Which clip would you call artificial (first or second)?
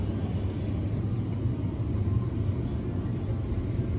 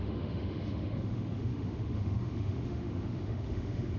second